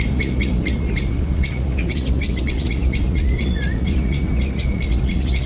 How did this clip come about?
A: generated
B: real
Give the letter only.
A